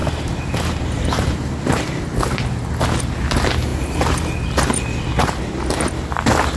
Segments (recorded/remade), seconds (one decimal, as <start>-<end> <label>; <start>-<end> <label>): 0.0-2.8 remade; 2.8-3.7 recorded; 3.7-5.9 remade; 5.9-6.6 recorded